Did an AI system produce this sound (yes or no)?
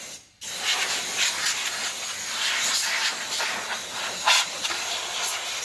no